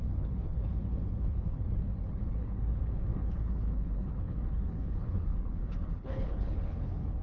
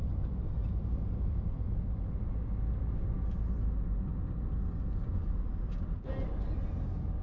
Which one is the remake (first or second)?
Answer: first